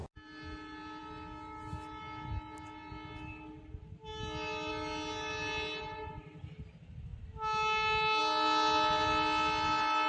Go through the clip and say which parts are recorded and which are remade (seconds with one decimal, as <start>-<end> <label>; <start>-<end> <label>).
0.0-10.1 recorded